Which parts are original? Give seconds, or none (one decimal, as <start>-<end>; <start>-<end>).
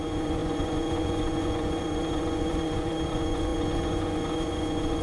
none